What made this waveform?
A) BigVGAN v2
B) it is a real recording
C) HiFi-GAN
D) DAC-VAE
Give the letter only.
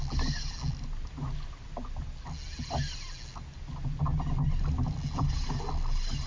B